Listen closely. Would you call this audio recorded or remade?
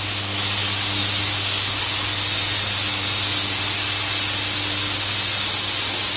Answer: recorded